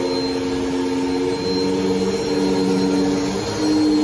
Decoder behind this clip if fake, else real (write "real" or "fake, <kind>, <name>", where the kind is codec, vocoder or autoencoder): real